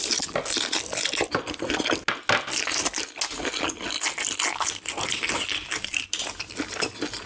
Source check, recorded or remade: recorded